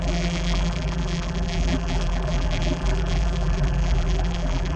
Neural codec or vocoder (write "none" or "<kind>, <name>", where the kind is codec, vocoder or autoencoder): vocoder, BigVGAN v2